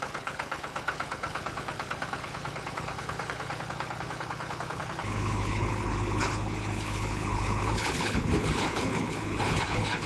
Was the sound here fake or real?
fake